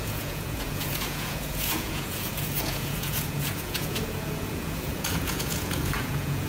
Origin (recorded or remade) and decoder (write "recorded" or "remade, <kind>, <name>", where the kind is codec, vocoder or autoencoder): remade, vocoder, Vocos